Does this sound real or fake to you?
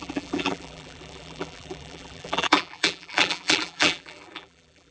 fake